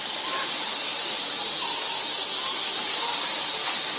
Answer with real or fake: real